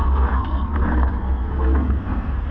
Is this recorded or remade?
remade